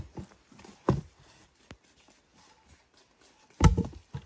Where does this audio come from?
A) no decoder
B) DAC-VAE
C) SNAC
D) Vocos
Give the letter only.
A